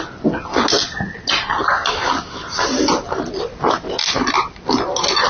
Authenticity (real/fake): real